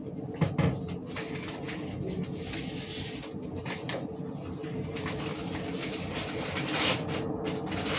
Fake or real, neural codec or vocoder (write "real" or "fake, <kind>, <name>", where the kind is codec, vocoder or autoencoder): real